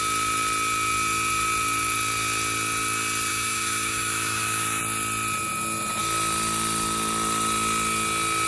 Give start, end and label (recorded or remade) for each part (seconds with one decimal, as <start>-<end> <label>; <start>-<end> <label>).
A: 0.0-3.3 recorded; 3.3-4.8 remade; 4.8-8.5 recorded